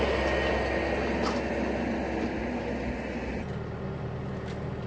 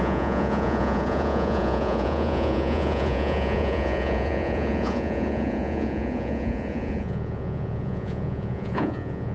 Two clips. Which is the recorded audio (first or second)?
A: first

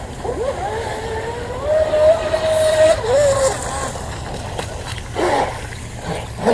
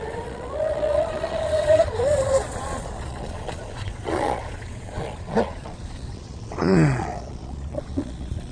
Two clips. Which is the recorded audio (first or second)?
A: first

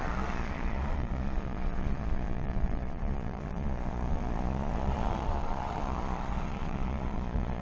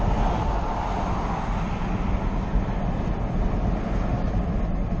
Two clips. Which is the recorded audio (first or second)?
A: second